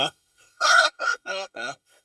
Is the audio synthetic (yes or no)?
yes